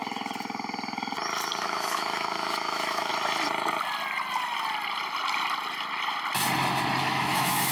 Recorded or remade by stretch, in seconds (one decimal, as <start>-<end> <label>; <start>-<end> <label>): 0.0-1.6 recorded; 1.6-3.1 remade; 3.1-7.0 recorded; 7.0-7.7 remade